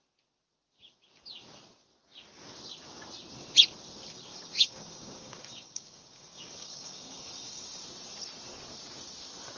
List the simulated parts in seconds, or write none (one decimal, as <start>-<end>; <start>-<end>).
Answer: 4.3-7.8